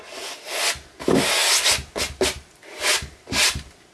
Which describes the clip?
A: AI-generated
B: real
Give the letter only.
B